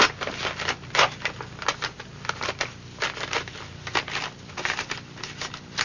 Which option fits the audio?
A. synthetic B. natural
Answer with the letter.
B